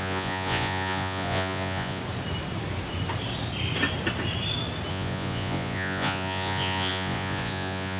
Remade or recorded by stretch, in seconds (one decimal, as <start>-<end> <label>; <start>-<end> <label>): 0.0-2.0 remade; 2.0-4.9 recorded; 4.9-8.0 remade